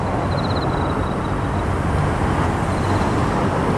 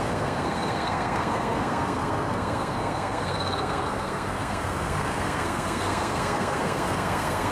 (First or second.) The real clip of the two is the first